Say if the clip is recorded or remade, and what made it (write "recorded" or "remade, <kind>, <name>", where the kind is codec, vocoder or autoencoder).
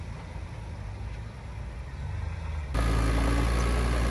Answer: recorded